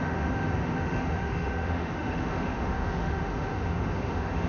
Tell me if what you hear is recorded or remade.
remade